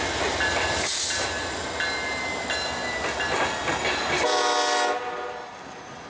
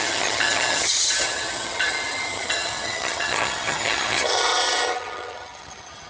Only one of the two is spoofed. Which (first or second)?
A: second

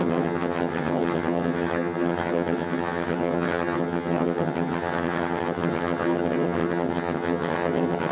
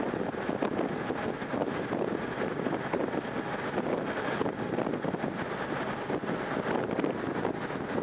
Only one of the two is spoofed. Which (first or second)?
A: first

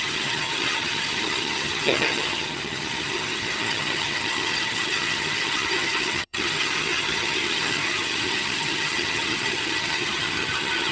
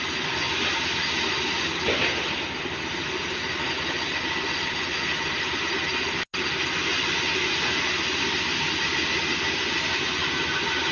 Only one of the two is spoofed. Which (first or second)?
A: first